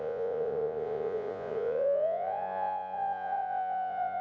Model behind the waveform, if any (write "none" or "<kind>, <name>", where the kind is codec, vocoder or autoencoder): vocoder, Vocos